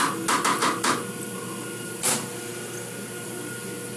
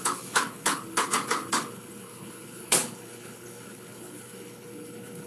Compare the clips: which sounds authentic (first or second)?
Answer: first